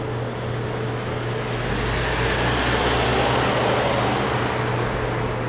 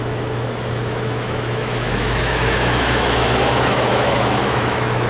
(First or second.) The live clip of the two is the first